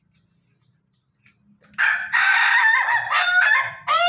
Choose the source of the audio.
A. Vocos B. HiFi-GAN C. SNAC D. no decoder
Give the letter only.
D